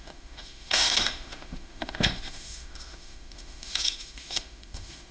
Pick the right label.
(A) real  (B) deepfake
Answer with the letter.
B